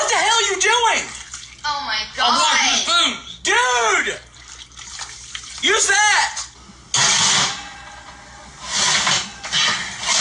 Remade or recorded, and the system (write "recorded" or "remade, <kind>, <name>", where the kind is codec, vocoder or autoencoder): recorded